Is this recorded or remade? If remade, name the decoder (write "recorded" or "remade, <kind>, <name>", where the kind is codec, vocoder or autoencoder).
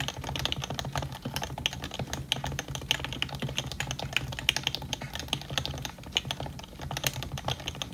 recorded